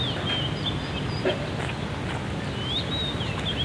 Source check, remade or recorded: recorded